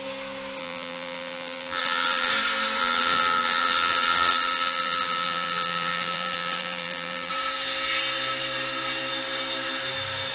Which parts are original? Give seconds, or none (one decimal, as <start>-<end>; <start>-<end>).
0.0-0.6; 2.3-2.8; 7.3-10.3